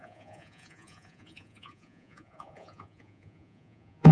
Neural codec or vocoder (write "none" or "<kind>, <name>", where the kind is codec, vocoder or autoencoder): vocoder, Vocos